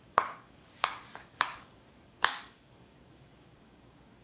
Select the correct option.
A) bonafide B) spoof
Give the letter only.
B